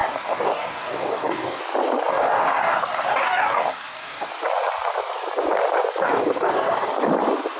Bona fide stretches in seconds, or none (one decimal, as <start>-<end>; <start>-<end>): 1.6-2.1; 4.3-6.0; 6.9-7.6